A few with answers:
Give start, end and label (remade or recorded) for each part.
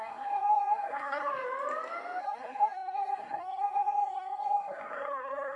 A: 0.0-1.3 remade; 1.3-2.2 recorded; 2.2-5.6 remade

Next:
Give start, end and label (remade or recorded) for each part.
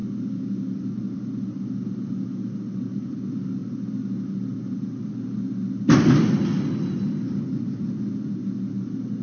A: 0.0-9.2 recorded